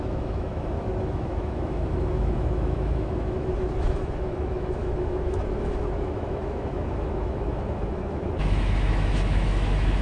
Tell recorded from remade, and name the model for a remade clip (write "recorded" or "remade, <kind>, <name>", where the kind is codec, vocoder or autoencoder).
remade, autoencoder, DAC-VAE